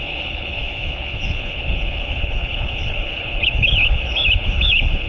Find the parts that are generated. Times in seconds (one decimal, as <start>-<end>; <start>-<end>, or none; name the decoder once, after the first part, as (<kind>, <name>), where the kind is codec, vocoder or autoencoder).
0.0-5.1 (codec, HILCodec)